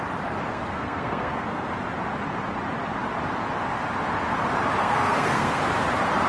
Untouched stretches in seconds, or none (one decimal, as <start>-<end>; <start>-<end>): 0.0-0.5; 1.7-4.8; 5.6-6.3